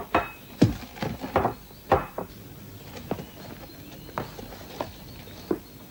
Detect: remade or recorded recorded